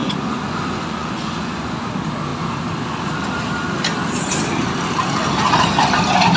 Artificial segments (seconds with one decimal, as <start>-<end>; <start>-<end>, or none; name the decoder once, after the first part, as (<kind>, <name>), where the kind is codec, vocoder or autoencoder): 0.0-1.9 (vocoder, Vocos)

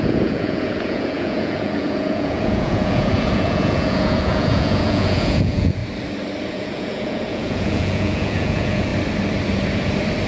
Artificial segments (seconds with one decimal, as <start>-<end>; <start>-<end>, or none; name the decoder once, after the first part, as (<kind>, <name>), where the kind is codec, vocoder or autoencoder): 0.0-5.8 (vocoder, Vocos); 6.5-8.9

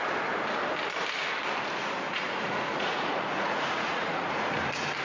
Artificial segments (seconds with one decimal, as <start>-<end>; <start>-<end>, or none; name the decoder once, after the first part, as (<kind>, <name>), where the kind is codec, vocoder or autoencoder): 2.1-4.6 (vocoder, Vocos)

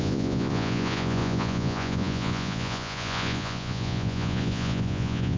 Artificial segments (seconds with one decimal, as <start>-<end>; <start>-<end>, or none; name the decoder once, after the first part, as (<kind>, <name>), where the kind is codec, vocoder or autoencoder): 0.0-5.4 (vocoder, Vocos)

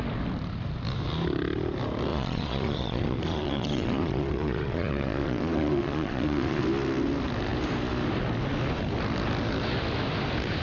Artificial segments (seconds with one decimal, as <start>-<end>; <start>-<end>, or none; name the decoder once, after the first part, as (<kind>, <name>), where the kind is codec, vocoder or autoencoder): 2.1-6.6 (vocoder, Vocos)